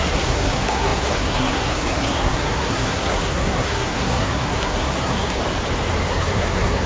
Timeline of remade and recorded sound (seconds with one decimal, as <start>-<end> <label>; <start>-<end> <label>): 0.0-5.4 remade; 5.4-6.1 recorded; 6.1-6.9 remade